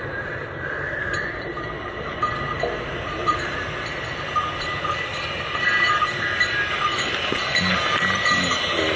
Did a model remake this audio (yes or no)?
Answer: no